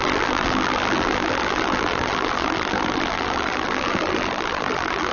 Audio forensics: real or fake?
fake